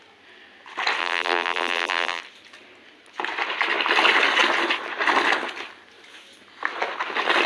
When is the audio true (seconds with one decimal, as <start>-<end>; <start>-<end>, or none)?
0.0-1.0; 2.2-7.5